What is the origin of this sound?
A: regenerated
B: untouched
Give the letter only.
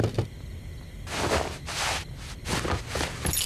B